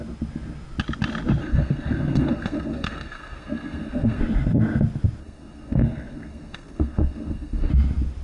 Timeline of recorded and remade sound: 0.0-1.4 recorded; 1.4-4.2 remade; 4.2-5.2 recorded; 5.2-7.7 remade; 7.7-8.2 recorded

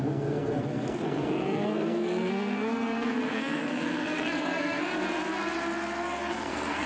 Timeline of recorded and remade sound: 0.0-4.9 remade; 4.9-6.3 recorded; 6.3-6.9 remade

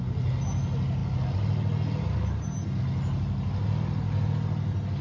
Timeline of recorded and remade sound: 0.0-5.0 recorded